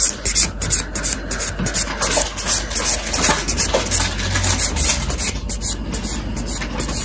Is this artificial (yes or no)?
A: no